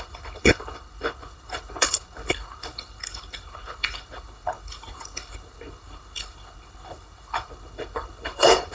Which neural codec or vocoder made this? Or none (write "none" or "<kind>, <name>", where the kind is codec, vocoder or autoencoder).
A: codec, HILCodec